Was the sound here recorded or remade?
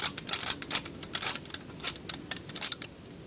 recorded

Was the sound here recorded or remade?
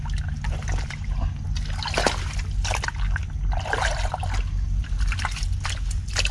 recorded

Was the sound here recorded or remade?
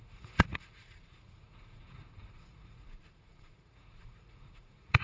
remade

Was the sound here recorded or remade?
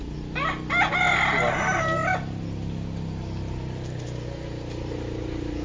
recorded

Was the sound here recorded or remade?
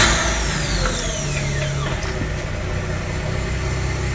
recorded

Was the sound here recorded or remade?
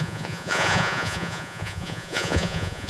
remade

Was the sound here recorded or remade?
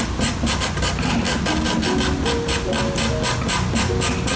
recorded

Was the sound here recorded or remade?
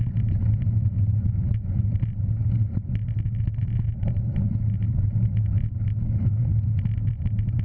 recorded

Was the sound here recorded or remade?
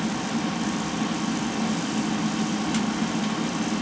recorded